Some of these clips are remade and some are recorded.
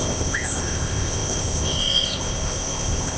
remade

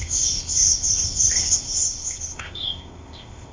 remade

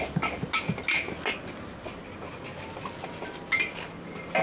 recorded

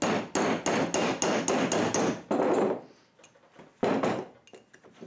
recorded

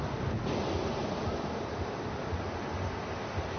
recorded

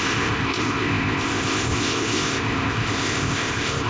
remade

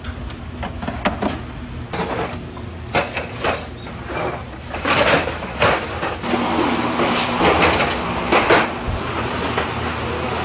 recorded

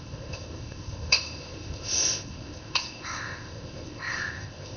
remade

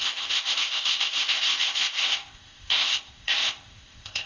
remade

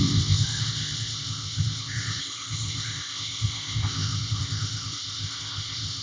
remade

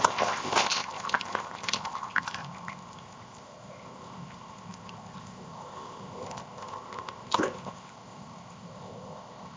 remade